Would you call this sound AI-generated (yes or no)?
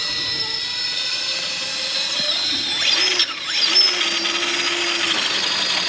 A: no